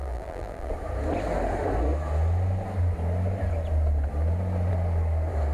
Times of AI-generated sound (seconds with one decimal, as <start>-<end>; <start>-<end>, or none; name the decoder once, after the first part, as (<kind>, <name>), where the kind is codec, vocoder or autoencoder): 0.0-0.7 (vocoder, BigVGAN v2)